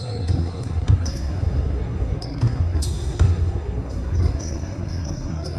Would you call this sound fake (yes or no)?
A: yes